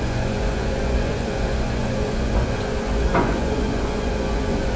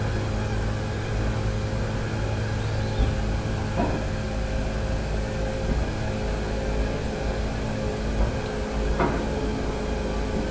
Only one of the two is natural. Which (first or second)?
second